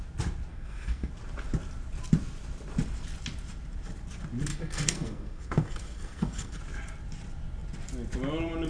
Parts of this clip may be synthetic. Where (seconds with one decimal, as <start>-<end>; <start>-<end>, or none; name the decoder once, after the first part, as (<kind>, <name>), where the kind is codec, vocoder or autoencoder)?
0.5-1.1 (codec, SNAC); 4.5-6.6